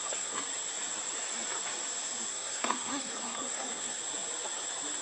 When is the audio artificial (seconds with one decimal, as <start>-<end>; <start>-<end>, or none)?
0.0-0.4; 2.3-4.0

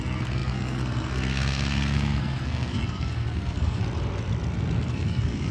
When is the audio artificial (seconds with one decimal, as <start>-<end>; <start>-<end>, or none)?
0.0-3.8; 4.9-5.5

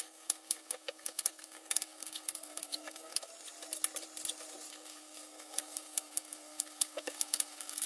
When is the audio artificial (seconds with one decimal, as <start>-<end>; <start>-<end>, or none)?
0.0-3.3; 4.7-7.9

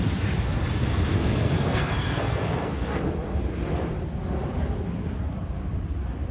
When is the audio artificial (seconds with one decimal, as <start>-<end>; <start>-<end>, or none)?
0.8-3.0

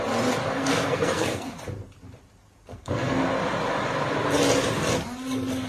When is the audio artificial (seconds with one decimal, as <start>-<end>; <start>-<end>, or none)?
0.5-1.5; 2.7-3.3

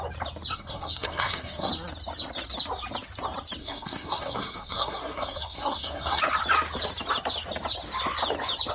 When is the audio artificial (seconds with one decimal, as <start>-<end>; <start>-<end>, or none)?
0.5-1.7; 3.6-6.2

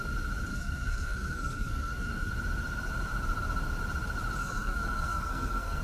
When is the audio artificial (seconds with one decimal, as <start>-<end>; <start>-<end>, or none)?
0.5-2.3; 4.4-5.8